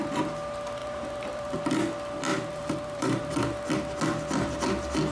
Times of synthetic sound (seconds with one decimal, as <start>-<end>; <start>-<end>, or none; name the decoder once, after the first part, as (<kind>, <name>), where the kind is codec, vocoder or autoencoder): 0.8-1.6 (vocoder, BigVGAN v2); 2.3-3.3